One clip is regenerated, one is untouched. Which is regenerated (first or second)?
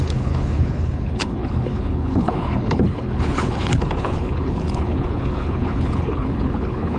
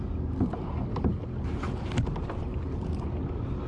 first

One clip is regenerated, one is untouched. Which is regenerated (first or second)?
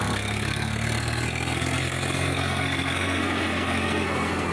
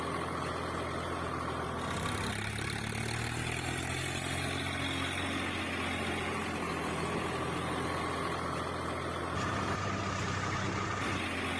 first